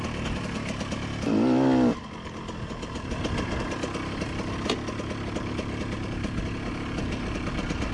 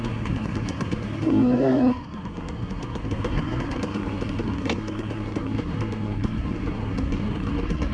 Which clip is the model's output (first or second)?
second